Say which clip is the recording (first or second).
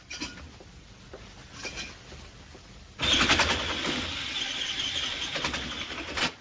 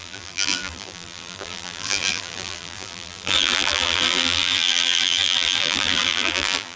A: first